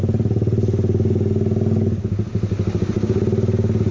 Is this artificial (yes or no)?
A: no